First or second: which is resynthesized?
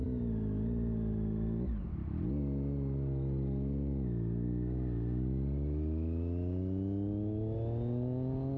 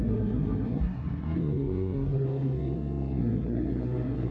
second